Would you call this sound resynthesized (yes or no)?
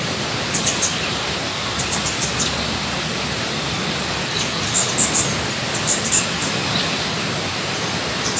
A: no